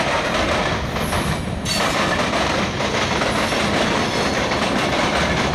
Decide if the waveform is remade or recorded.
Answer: remade